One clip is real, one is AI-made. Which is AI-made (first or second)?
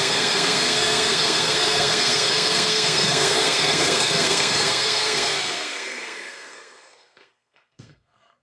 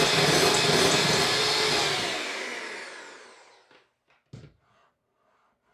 first